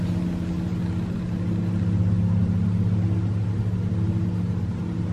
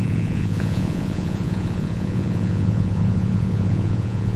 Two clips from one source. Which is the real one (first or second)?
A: first